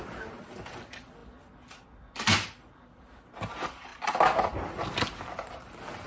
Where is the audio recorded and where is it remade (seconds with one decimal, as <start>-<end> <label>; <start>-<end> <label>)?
0.0-6.1 recorded